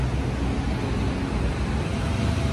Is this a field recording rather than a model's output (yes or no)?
yes